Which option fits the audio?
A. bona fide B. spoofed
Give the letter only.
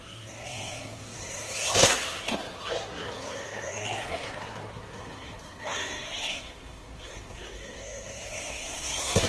B